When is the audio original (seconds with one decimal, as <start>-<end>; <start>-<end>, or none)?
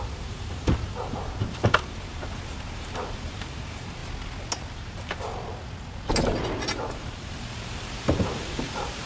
4.0-4.7; 5.3-6.6